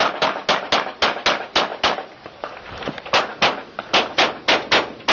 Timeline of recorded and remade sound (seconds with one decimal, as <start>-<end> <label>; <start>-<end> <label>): 0.0-5.1 recorded